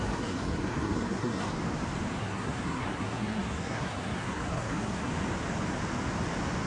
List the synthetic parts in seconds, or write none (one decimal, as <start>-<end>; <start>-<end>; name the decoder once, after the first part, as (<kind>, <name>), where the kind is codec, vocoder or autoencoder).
0.0-1.5 (codec, SNAC); 2.2-5.1